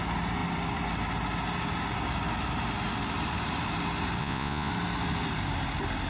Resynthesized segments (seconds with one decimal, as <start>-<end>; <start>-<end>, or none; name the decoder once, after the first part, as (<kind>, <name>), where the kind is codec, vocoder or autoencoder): 4.2-4.7 (vocoder, Vocos)